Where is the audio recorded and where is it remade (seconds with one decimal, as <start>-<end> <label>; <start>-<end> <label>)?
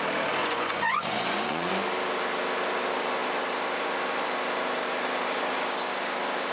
0.0-0.4 recorded; 0.4-1.7 remade; 1.7-6.5 recorded